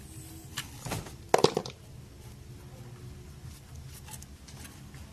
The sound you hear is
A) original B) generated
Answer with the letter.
A